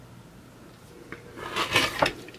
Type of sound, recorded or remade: recorded